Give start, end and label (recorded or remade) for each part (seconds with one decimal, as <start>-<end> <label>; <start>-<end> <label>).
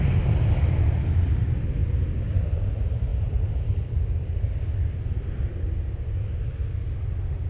0.0-7.5 recorded